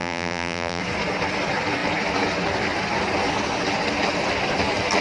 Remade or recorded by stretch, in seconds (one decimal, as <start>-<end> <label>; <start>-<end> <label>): 0.0-0.8 remade; 0.8-5.0 recorded